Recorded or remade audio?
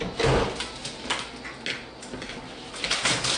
recorded